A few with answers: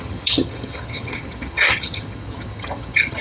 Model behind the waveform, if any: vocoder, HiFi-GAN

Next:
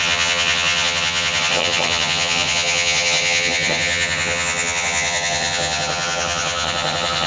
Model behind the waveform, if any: vocoder, HiFi-GAN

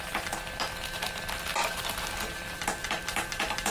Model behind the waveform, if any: none